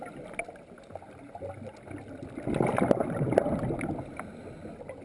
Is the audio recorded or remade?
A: recorded